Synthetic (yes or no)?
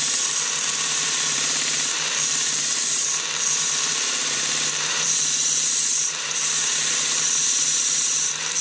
yes